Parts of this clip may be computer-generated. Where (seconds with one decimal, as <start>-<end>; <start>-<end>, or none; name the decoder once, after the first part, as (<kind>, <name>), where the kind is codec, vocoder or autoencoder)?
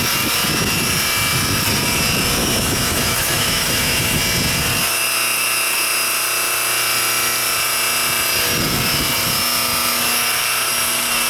2.4-4.2 (autoencoder, DAC-VAE)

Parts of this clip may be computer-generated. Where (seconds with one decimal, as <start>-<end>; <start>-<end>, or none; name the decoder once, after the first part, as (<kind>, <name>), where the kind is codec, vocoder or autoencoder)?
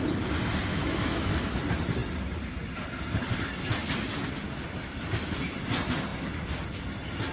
0.7-1.6 (autoencoder, DAC-VAE)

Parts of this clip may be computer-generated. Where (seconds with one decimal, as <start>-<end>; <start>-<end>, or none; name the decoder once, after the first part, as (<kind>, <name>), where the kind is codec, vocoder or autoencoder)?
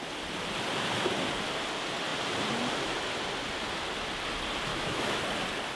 4.7-5.2 (autoencoder, DAC-VAE)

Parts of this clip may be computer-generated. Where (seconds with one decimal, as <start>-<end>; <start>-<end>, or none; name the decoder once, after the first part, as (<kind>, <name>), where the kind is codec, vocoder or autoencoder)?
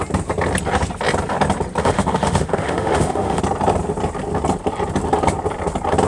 1.8-3.4 (autoencoder, DAC-VAE)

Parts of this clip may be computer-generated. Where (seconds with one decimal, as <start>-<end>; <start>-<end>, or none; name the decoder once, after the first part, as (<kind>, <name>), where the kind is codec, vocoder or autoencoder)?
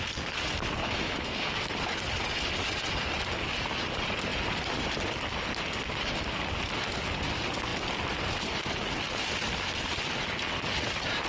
0.8-1.7 (autoencoder, DAC-VAE)